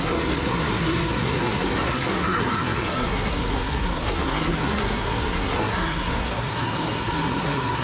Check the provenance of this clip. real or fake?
fake